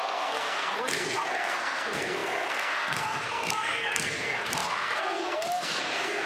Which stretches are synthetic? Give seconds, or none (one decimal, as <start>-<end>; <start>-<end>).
0.0-6.3